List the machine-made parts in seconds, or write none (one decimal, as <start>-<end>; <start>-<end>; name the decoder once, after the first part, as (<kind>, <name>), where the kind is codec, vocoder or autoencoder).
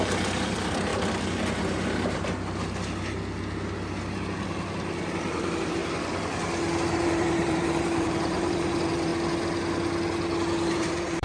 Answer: 0.0-0.9 (vocoder, BigVGAN v2); 5.0-5.8; 6.9-9.1; 10.7-11.2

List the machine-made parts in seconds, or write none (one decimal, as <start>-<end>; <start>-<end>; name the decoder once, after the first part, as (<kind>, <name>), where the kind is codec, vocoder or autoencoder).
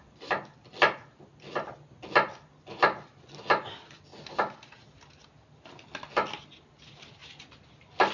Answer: none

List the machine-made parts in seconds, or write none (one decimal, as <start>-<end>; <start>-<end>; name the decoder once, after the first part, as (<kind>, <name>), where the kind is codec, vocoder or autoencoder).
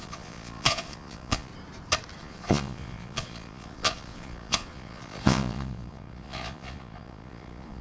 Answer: 0.0-1.5 (vocoder, Vocos); 2.2-7.8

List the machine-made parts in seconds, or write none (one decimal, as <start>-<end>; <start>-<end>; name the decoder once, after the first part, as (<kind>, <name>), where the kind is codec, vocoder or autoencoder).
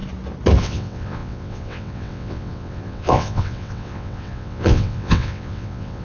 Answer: 0.6-6.0 (vocoder, WaveNeXt)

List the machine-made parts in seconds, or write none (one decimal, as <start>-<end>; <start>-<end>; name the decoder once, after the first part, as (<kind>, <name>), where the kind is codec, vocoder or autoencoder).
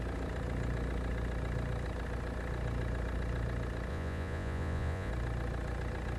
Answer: 3.9-5.1 (vocoder, Vocos)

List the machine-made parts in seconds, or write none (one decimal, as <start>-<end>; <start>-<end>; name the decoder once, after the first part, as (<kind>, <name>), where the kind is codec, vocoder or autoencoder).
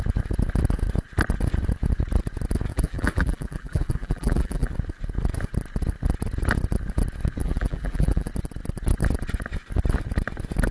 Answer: 2.7-4.7 (vocoder, BigVGAN v2); 7.4-8.3